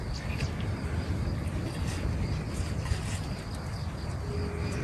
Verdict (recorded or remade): recorded